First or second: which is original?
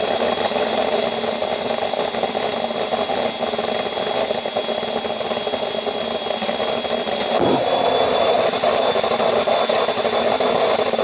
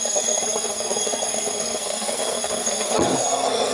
first